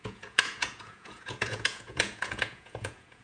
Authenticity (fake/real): fake